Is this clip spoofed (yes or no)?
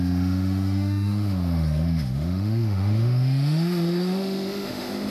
yes